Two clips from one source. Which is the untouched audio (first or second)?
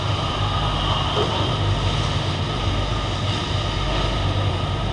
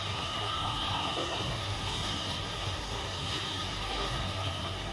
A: first